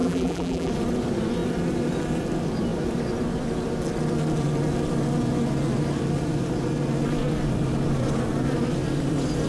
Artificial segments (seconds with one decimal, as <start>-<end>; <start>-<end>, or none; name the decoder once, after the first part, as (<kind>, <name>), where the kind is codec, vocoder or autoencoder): 0.0-0.7 (vocoder, BigVGAN v2)